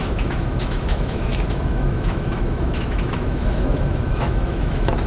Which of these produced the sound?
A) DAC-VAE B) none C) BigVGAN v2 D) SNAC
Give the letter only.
A